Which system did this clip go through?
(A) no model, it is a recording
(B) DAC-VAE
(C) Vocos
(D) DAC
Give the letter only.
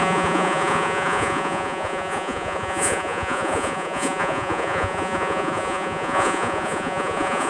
C